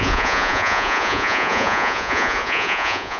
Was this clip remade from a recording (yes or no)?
yes